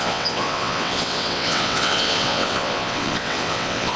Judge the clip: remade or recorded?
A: remade